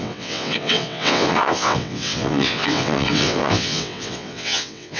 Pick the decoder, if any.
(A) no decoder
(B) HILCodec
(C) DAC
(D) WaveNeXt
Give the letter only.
D